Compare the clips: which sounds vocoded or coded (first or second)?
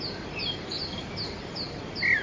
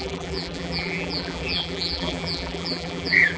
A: second